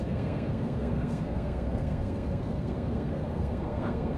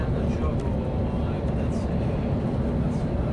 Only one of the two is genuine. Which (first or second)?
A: second